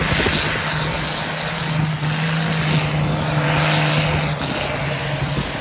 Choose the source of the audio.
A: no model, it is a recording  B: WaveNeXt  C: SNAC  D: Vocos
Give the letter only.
A